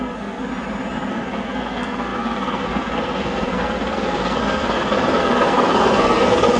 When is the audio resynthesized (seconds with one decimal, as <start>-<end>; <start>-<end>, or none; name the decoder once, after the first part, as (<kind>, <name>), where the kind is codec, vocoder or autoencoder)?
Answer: 0.0-0.5 (codec, SNAC); 1.1-6.6